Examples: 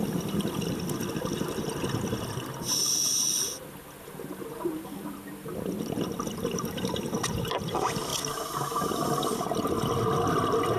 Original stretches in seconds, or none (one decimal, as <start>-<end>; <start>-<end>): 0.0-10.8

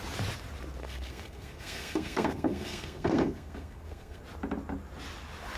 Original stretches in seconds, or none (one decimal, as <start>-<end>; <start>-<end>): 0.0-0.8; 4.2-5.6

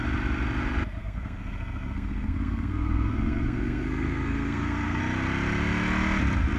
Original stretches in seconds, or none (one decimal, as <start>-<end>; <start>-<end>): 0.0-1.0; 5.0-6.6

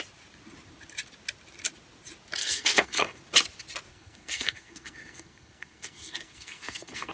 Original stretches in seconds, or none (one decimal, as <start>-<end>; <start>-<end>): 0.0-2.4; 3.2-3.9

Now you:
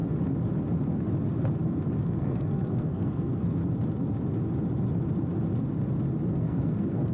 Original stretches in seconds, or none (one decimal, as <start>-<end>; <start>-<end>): 0.0-2.0; 3.6-6.3

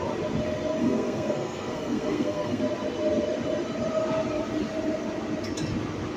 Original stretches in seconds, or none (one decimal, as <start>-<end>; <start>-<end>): 0.0-0.8; 2.6-6.2

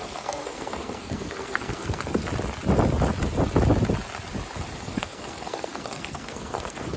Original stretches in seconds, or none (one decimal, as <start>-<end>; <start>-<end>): 2.2-4.8

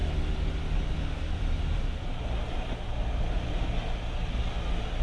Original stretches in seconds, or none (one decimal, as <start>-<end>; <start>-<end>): 0.0-5.0